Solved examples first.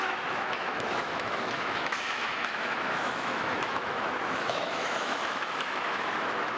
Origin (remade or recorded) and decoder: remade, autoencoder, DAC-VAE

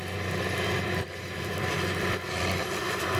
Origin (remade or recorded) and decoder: remade, vocoder, BigVGAN v2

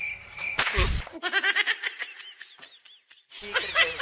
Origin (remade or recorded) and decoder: recorded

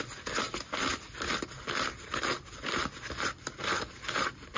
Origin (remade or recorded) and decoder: recorded